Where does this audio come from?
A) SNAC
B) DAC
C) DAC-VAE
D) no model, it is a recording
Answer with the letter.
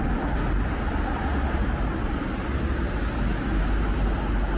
D